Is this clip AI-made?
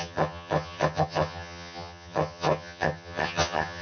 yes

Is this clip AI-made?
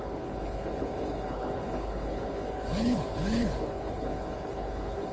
yes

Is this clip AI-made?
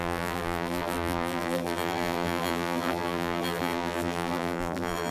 yes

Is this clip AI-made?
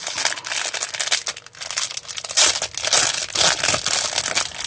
no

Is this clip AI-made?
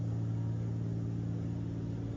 no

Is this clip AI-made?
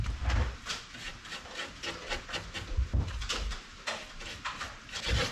no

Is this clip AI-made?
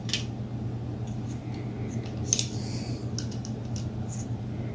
no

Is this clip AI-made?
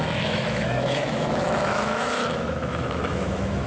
yes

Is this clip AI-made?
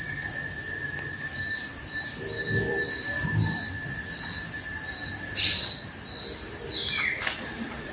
yes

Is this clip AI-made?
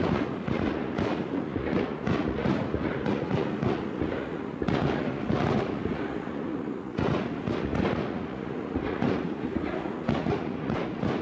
yes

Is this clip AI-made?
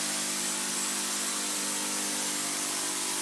no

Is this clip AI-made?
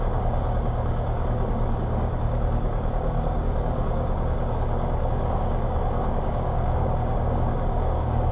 yes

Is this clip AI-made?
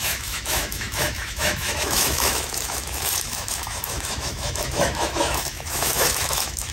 yes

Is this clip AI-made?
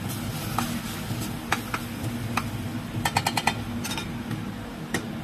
no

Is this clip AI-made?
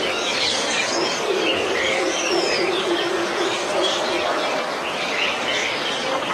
yes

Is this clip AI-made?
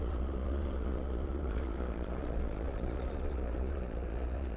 yes